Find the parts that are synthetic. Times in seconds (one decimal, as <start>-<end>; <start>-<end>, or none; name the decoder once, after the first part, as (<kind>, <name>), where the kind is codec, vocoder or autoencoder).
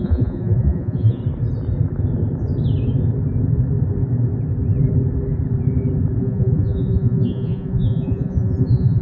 0.0-1.2 (vocoder, Vocos); 6.2-9.0